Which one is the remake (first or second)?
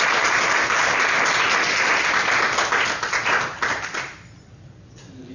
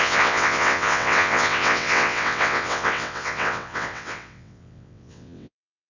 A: second